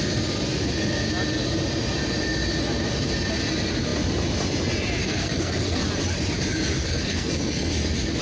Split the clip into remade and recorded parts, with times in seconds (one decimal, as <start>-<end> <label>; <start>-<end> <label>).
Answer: 0.0-5.0 recorded; 5.0-5.8 remade; 5.8-6.8 recorded; 6.8-7.7 remade; 7.7-8.2 recorded